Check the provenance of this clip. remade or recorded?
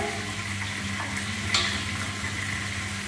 recorded